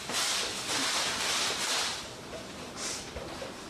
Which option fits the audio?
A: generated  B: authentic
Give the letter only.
B